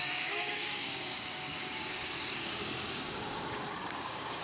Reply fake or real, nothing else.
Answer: fake